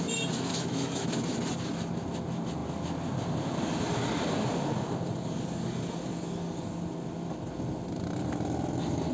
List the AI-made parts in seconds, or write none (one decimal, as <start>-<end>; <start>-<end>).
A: 0.5-1.1